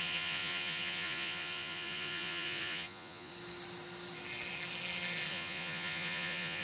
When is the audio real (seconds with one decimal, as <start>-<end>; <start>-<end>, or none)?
3.3-5.3